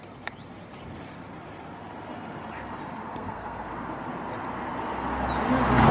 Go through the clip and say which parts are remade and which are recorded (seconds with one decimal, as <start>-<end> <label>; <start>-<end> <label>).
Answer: 0.0-3.1 recorded; 3.1-3.7 remade; 3.7-5.9 recorded